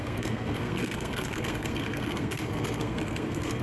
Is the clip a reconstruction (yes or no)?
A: yes